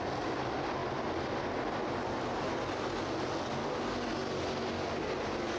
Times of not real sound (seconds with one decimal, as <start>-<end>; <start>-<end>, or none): none